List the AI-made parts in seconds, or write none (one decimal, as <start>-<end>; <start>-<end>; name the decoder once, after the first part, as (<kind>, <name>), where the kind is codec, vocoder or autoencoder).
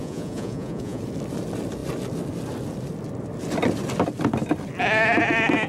0.0-1.0 (vocoder, Vocos)